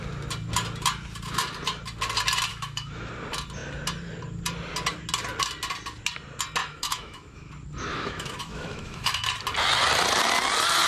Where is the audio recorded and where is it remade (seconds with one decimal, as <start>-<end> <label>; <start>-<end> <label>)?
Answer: 0.0-2.5 recorded; 2.5-3.1 remade; 3.1-6.6 recorded; 6.6-7.5 remade; 7.5-7.9 recorded; 7.9-9.3 remade; 9.3-10.9 recorded